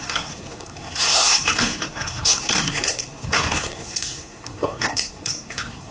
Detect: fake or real fake